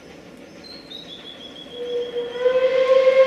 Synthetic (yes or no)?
no